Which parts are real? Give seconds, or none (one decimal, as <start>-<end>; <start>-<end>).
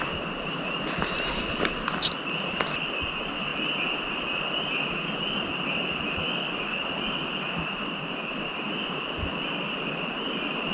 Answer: 0.0-10.7